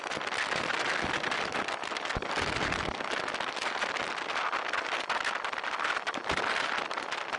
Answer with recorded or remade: recorded